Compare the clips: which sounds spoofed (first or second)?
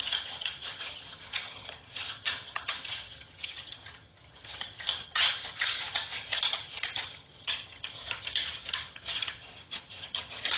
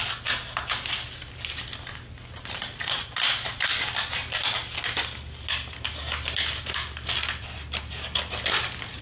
first